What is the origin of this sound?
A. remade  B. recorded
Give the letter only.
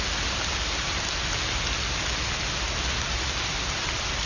B